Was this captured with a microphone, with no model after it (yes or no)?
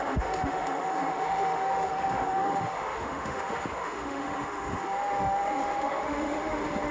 no